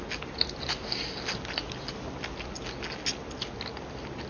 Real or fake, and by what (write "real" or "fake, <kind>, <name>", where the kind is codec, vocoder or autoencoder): real